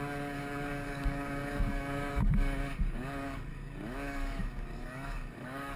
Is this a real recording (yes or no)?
no